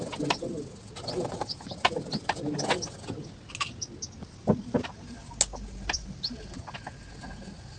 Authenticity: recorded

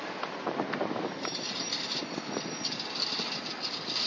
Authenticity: recorded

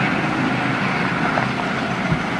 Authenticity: recorded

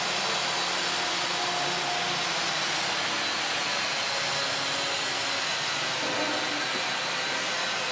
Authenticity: recorded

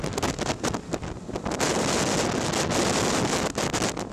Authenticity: recorded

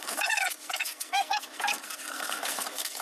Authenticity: remade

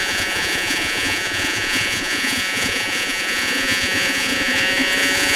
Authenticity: remade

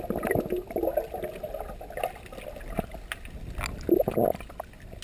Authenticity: recorded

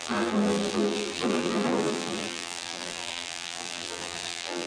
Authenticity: remade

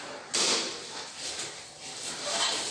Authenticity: recorded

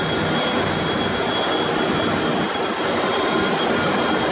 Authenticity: recorded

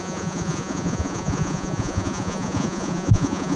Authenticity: remade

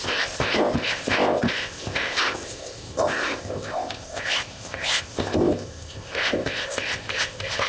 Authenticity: remade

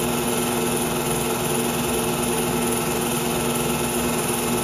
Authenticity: recorded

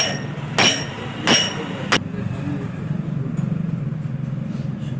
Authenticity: recorded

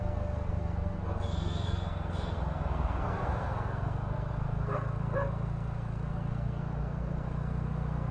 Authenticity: remade